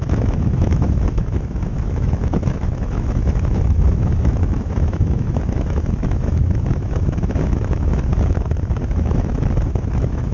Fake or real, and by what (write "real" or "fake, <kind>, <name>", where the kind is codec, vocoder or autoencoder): fake, autoencoder, DAC-VAE